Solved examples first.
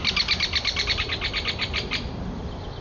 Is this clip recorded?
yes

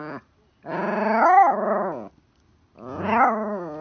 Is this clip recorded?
yes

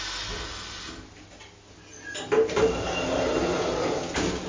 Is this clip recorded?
yes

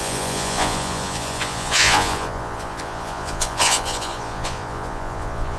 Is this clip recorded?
no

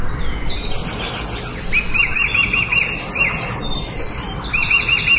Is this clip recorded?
yes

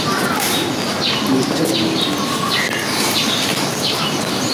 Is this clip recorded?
yes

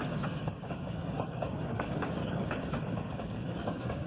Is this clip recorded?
no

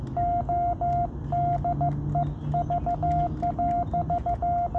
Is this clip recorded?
yes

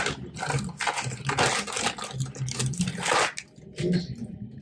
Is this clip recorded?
yes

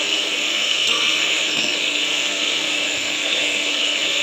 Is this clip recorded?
no